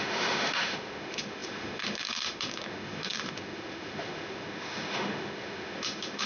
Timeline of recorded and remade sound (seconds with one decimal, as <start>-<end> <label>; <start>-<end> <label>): 0.0-6.3 remade